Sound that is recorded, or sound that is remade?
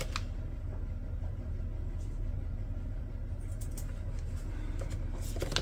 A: recorded